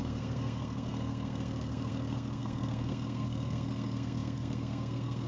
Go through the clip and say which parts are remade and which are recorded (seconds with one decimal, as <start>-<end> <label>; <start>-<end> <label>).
0.0-5.3 remade